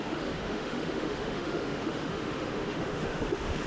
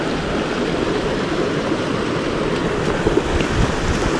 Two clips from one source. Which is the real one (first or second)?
second